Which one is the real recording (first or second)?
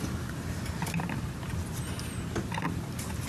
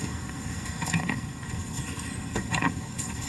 first